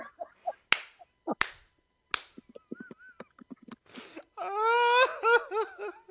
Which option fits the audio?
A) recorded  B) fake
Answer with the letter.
A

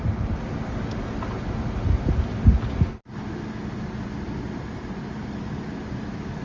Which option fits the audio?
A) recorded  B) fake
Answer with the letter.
A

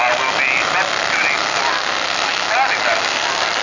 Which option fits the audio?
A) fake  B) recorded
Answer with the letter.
B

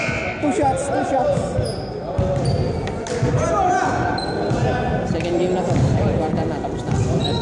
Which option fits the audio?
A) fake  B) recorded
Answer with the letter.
B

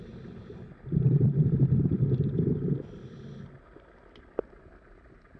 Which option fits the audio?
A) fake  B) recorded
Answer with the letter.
B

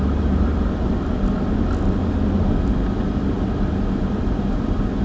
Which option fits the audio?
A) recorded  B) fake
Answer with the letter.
A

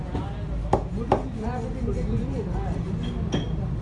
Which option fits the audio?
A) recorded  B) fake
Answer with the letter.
A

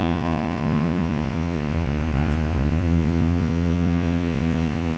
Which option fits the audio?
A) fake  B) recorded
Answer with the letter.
A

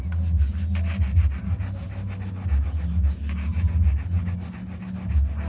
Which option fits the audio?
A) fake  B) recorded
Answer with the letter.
B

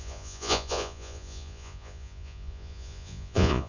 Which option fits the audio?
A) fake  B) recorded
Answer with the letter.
A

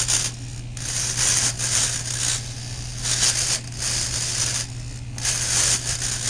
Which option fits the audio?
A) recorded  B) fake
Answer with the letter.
A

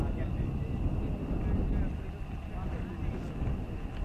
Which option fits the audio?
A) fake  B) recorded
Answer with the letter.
B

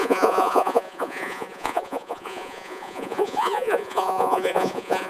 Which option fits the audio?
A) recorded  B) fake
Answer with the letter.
B